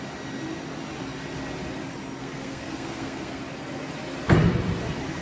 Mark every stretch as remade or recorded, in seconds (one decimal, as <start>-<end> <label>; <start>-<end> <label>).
0.0-2.2 recorded; 2.2-3.4 remade; 3.4-5.2 recorded